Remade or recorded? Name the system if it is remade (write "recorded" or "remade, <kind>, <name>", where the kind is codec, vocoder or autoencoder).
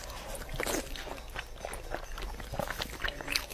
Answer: recorded